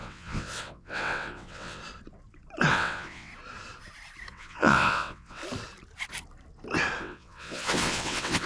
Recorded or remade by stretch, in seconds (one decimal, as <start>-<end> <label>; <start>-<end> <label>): 0.0-1.8 remade; 1.8-2.7 recorded; 2.7-3.3 remade; 3.3-4.3 recorded; 4.3-5.4 remade; 5.4-7.0 recorded; 7.0-8.5 remade